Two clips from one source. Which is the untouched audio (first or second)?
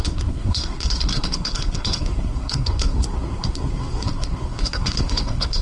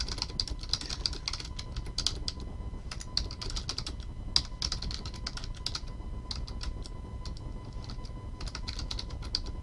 second